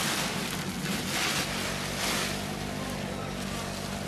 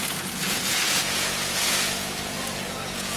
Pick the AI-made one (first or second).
second